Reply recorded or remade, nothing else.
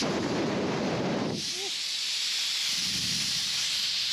remade